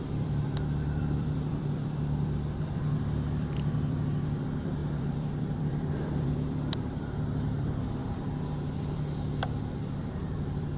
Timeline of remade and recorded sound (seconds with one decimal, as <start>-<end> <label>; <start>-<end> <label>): 0.0-10.8 remade